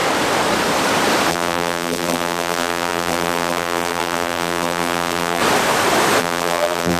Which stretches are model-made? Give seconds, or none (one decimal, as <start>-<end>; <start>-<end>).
1.3-5.4; 6.2-7.0